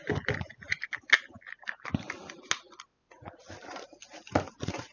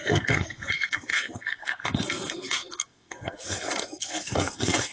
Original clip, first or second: first